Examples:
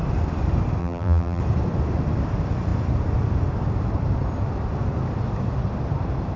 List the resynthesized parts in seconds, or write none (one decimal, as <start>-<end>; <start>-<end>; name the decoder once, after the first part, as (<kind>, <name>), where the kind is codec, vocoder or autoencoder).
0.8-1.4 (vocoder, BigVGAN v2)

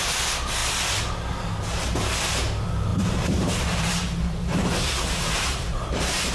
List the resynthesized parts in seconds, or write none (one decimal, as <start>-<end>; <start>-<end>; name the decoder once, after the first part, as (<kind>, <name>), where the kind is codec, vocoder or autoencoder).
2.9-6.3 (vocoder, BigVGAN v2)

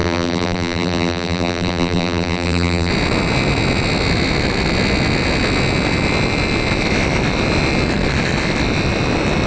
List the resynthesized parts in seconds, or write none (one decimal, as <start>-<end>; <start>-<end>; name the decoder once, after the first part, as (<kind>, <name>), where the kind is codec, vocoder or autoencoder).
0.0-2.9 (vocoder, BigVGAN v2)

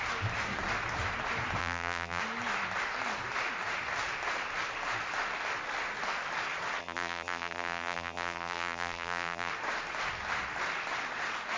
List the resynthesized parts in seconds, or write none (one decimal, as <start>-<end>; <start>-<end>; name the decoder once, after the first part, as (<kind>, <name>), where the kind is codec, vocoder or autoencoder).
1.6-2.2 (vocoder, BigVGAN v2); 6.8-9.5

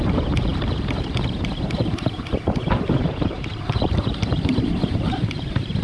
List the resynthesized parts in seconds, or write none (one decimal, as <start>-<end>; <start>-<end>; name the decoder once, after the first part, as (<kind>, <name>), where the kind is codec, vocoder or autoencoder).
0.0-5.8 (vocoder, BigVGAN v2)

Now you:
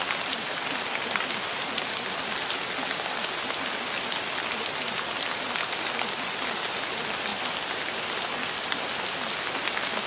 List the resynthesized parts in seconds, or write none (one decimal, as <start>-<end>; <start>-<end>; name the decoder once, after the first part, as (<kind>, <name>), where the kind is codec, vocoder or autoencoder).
none